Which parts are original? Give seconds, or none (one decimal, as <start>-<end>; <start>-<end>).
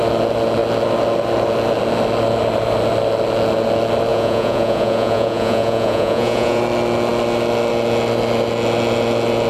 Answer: 0.0-4.1; 6.6-9.5